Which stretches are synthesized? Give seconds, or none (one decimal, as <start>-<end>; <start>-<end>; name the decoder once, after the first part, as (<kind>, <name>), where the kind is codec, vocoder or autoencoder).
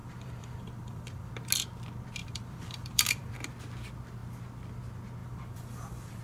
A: 0.0-1.3 (vocoder, BigVGAN v2); 2.2-3.3; 5.2-6.2